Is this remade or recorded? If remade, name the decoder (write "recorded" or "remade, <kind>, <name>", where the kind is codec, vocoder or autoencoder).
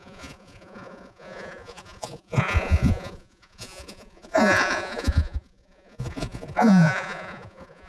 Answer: remade, vocoder, Vocos